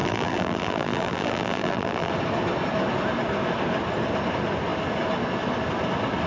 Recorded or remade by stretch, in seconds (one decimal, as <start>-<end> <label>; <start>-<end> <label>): 0.0-2.1 remade; 2.1-6.3 recorded

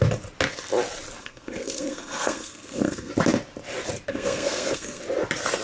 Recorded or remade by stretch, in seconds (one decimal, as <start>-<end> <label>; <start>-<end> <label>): 0.0-1.2 recorded; 1.2-3.1 remade; 3.1-4.1 recorded; 4.1-5.0 remade; 5.0-5.6 recorded

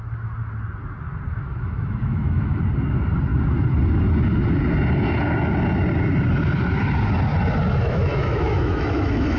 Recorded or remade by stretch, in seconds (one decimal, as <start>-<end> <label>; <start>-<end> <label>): 0.0-1.3 recorded; 1.3-2.6 remade; 2.6-7.8 recorded; 7.8-9.4 remade

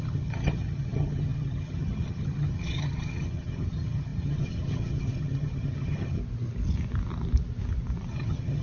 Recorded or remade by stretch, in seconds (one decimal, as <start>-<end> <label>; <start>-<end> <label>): 0.0-6.2 remade; 6.2-8.1 recorded; 8.1-8.6 remade